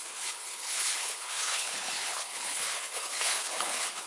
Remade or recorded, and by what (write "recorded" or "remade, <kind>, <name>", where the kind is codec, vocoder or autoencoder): remade, codec, HILCodec